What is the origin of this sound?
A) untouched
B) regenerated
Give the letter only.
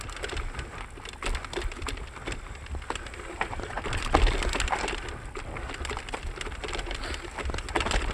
A